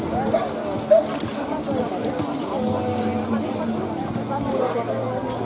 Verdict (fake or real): real